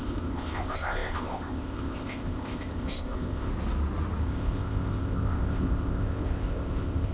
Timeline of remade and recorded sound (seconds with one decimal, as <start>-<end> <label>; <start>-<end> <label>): 0.0-3.5 remade; 3.5-4.2 recorded; 4.2-7.1 remade